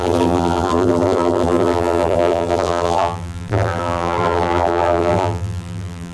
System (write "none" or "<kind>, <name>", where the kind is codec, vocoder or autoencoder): vocoder, BigVGAN v2